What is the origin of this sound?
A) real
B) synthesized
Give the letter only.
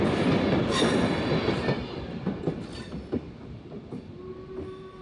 A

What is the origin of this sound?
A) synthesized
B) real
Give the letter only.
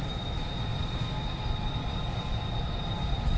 B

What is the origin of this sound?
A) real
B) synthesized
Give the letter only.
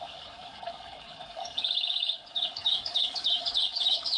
B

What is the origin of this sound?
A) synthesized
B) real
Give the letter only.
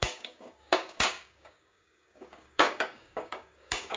A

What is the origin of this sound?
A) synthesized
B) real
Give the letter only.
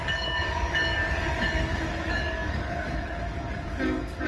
A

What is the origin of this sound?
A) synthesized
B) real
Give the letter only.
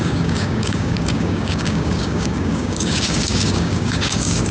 A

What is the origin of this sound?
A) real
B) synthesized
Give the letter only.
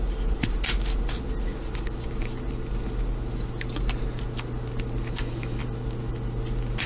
A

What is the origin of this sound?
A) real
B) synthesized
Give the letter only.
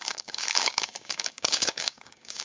B